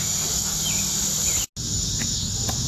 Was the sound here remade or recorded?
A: recorded